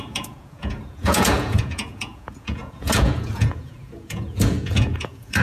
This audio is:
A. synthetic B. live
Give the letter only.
A